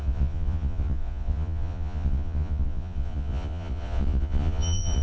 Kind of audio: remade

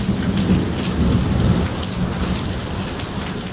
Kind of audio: recorded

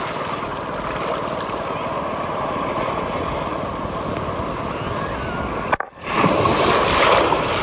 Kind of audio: recorded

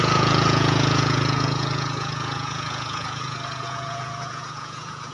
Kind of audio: remade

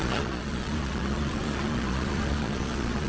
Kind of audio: remade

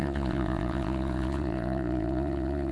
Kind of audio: remade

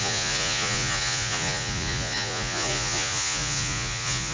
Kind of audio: remade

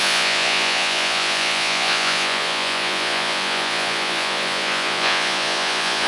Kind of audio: remade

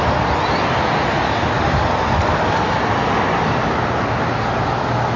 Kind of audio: recorded